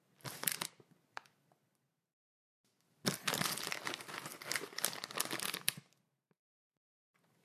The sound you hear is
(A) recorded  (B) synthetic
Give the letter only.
A